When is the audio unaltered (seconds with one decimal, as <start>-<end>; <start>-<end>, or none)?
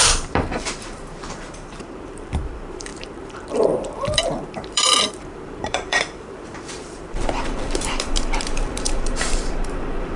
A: none